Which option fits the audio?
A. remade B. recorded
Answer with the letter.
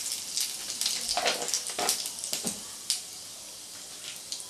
B